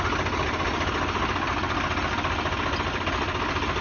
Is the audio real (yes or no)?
yes